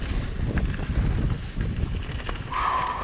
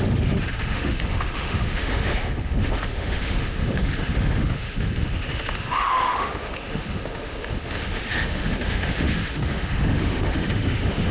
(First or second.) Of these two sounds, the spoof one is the second